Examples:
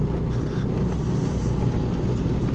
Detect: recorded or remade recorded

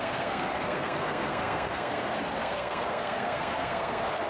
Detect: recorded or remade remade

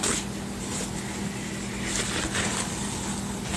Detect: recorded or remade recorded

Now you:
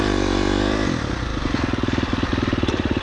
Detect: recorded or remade remade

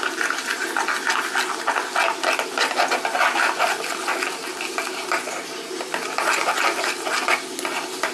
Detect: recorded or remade recorded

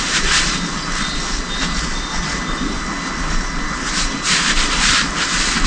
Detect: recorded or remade recorded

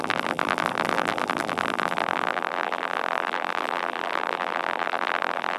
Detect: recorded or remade remade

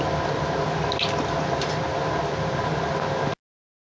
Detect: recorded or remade recorded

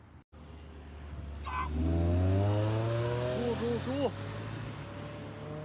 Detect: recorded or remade recorded